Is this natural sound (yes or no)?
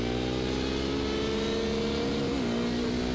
yes